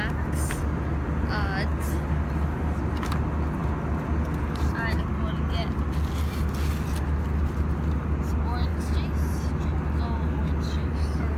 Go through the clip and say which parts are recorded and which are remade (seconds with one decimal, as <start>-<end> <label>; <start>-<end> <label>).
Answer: 0.0-11.4 recorded